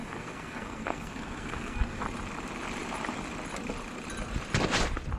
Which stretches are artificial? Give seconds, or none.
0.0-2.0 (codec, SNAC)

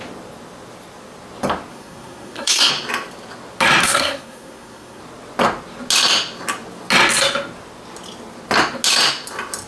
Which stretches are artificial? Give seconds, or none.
1.7-2.7 (codec, SNAC); 3.8-5.0

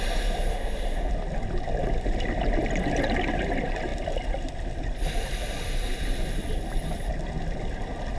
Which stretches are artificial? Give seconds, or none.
0.5-1.1 (autoencoder, DAC-VAE)

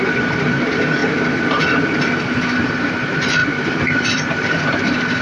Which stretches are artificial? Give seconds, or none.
0.0-5.2 (vocoder, BigVGAN v2)

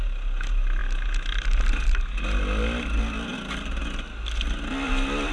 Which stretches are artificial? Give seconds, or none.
none

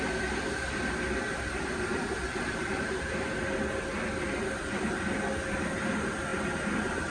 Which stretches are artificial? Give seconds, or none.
none

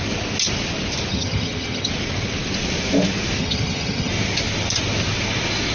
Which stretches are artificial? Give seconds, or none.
1.1-1.9 (vocoder, HiFi-GAN); 3.4-4.1

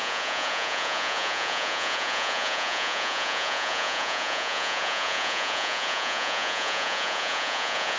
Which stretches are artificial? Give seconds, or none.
0.0-8.0 (vocoder, Vocos)